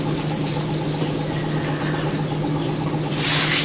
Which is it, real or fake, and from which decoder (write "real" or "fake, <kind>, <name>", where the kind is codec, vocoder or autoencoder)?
real